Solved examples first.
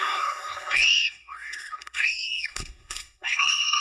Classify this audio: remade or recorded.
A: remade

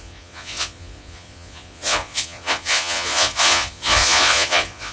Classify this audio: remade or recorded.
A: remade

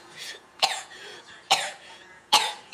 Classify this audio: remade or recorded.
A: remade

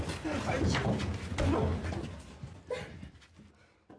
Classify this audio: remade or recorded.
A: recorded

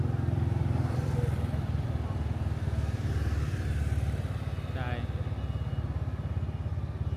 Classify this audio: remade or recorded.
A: recorded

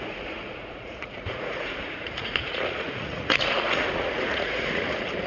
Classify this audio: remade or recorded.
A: remade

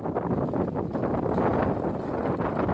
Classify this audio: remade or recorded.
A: recorded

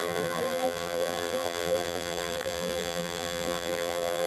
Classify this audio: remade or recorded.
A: remade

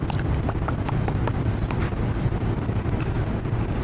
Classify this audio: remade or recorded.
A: recorded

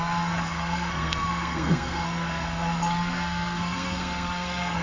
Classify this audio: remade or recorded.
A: remade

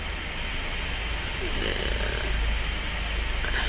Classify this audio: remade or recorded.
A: recorded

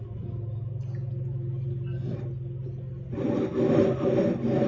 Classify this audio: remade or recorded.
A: recorded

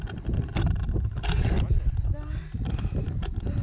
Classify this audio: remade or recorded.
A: recorded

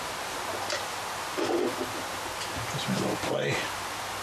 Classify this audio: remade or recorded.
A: recorded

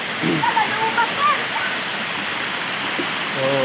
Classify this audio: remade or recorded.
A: recorded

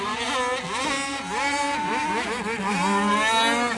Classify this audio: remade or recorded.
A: recorded